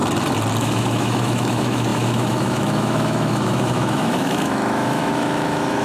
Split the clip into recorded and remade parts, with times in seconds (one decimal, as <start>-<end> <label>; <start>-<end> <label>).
0.0-0.6 recorded; 0.6-5.8 remade